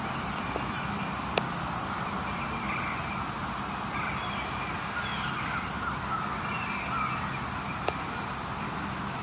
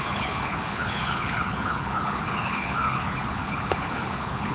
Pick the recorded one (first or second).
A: first